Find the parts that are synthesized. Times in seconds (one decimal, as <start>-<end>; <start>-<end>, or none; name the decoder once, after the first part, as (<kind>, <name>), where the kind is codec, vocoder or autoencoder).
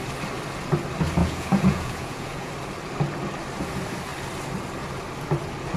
1.2-2.5 (vocoder, Vocos)